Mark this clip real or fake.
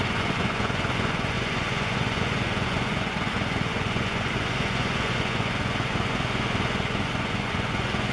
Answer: fake